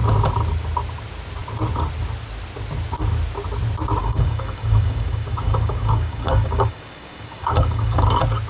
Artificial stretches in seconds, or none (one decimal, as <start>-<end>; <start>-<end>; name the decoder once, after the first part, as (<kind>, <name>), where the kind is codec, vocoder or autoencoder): 4.0-8.1 (codec, DAC)